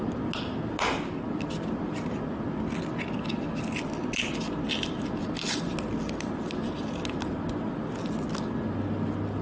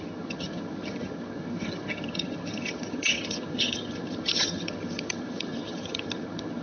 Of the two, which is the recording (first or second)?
first